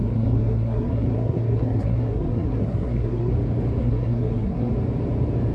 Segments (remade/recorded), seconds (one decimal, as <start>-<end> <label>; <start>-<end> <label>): 0.0-3.3 remade; 3.3-3.8 recorded; 3.8-4.7 remade; 4.7-5.5 recorded